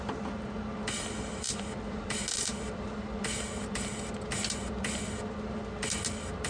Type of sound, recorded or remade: recorded